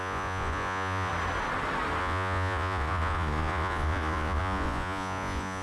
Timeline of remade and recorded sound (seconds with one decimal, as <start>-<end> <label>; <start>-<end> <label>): 0.0-1.1 remade; 1.1-2.0 recorded; 2.0-5.6 remade